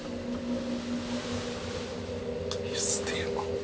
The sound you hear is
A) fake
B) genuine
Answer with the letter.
B